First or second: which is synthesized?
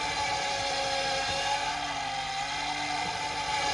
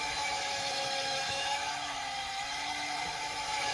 second